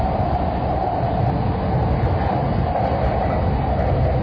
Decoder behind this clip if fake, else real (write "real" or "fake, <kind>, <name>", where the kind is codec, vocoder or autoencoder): real